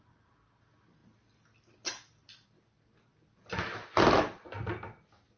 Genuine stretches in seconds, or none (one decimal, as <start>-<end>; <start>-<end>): 0.0-5.4